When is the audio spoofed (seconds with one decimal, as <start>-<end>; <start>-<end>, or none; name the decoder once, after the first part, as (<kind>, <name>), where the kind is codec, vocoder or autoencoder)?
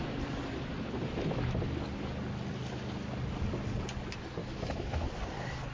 4.4-5.1 (autoencoder, DAC-VAE)